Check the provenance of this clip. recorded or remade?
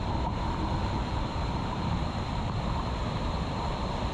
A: remade